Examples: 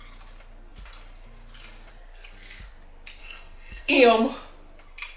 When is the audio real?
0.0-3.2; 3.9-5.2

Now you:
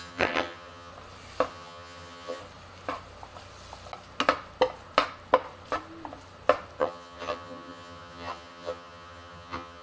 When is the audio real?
0.9-1.5; 2.4-6.8